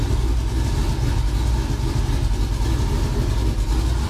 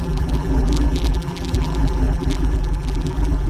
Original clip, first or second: first